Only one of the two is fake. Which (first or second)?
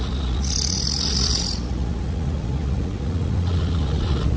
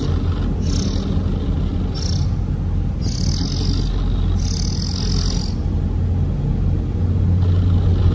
first